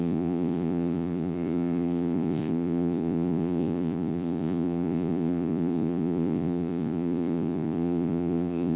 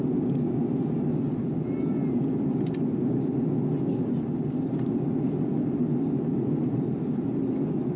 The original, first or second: second